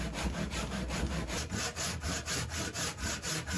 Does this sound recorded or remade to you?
remade